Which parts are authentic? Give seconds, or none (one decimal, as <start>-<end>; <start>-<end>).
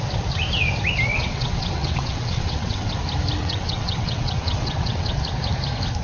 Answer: 0.0-1.1; 2.9-3.4; 5.2-6.0